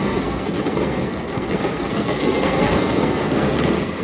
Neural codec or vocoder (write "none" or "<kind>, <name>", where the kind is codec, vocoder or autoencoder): codec, SNAC